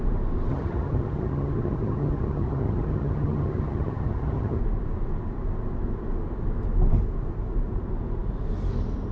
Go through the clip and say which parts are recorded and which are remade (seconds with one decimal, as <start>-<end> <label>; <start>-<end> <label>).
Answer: 0.0-0.5 recorded; 0.5-4.6 remade; 4.6-9.1 recorded